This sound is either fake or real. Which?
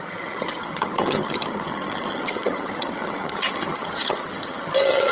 fake